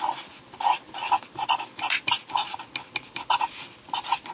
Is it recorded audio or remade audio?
recorded